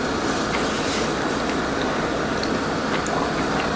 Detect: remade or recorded recorded